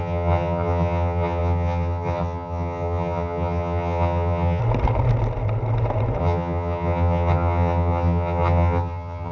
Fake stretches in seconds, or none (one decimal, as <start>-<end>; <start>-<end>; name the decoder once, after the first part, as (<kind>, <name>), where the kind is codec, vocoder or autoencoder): 0.0-4.6 (vocoder, HiFi-GAN); 6.2-9.3